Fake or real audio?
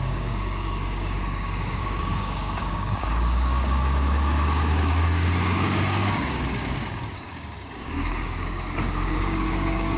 fake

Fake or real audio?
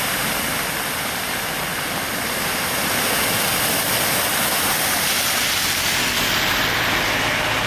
real